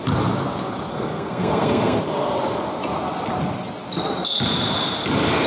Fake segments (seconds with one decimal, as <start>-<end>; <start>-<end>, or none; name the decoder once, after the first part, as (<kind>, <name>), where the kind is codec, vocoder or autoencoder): 0.9-2.0 (codec, SNAC)